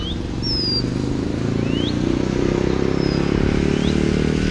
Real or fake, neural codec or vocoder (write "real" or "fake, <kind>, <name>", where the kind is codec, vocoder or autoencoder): real